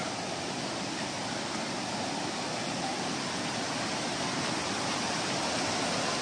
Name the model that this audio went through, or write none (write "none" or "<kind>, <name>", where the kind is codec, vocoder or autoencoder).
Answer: none